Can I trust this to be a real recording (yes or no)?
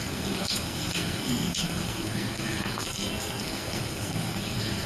no